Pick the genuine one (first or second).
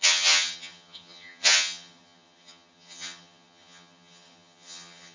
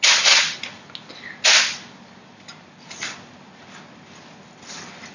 second